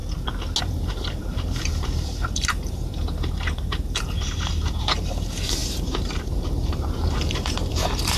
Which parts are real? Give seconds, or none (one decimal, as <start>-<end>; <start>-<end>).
0.0-0.6